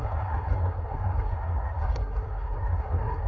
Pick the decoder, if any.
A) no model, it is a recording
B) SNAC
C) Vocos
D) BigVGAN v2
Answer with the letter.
B